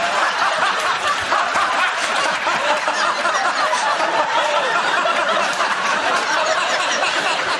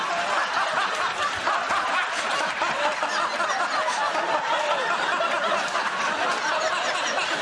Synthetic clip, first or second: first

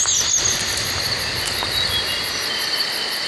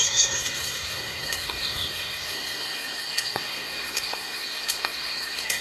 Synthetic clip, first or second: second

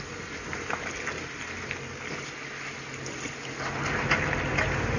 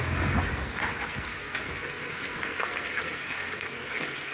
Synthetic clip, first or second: second